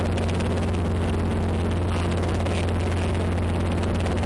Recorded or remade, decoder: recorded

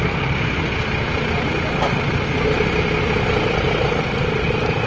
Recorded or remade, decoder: recorded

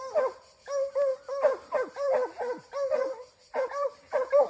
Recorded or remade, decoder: recorded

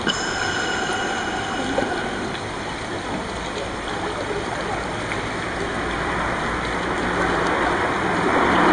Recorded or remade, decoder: recorded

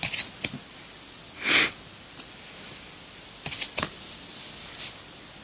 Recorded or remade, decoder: recorded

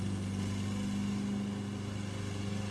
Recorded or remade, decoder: recorded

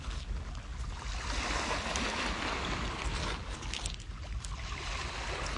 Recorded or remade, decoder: recorded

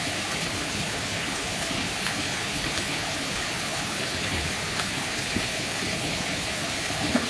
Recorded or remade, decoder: remade, codec, HILCodec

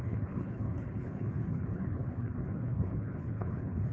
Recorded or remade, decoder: remade, codec, HILCodec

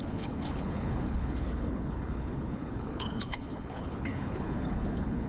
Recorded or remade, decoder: remade, codec, HILCodec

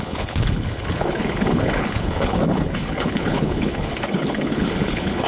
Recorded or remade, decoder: remade, codec, HILCodec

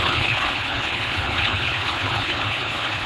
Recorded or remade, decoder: remade, codec, HILCodec